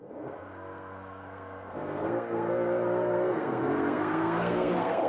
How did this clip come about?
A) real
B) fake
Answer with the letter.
B